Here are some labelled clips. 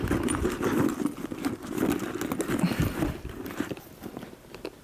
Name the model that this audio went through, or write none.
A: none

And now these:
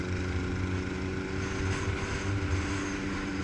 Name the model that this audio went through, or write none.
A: none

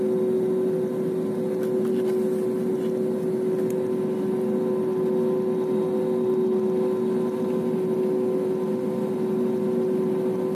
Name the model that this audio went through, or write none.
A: none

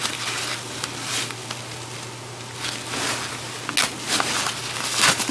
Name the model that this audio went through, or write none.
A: none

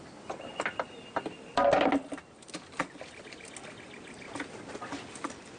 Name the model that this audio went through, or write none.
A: none